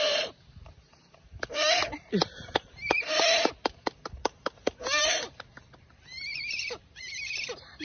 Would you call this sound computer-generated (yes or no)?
yes